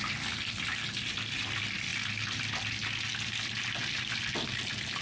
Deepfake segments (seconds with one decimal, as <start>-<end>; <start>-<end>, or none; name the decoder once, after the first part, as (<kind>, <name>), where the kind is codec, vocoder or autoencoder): none